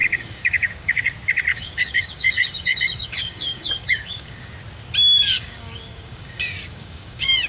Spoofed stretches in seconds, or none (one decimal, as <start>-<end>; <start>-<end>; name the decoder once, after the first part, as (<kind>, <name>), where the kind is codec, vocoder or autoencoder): 0.0-1.1 (codec, DAC); 1.5-4.5; 5.0-7.5